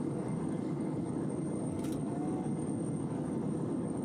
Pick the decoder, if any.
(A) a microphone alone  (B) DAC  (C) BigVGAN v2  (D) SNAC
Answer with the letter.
B